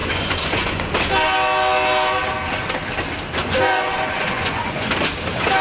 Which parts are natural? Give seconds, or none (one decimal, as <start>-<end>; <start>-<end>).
0.9-3.4; 4.9-5.6